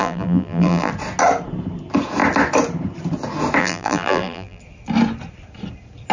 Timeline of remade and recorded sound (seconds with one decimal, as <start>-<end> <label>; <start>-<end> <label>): 0.0-0.9 remade; 0.9-3.6 recorded; 3.6-4.6 remade; 4.6-6.1 recorded